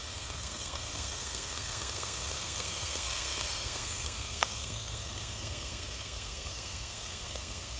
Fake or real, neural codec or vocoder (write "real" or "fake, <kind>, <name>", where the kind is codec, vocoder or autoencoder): fake, codec, SNAC